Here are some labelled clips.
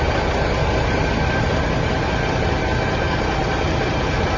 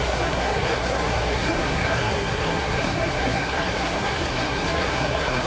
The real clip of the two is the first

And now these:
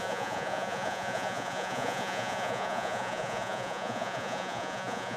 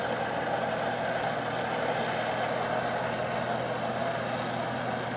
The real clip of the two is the second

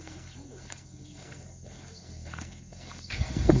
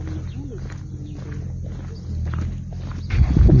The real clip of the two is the second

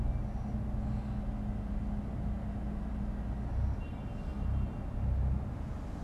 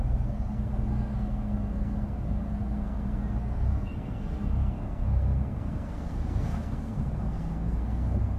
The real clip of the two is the first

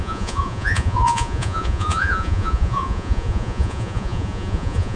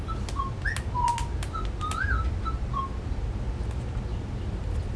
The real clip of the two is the second